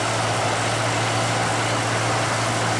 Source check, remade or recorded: recorded